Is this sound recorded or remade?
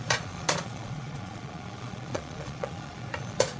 remade